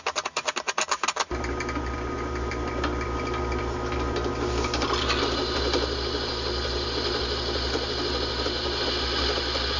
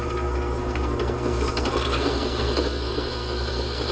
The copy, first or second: second